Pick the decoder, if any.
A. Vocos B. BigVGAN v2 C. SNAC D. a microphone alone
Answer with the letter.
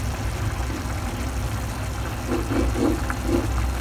D